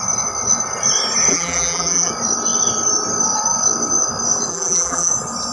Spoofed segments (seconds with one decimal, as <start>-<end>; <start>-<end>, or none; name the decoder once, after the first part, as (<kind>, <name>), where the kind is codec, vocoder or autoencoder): 1.3-2.1 (vocoder, BigVGAN v2); 4.5-5.1